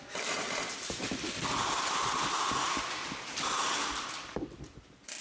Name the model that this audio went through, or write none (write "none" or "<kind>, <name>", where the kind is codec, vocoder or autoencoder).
none